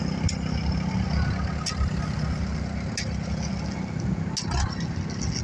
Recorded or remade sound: recorded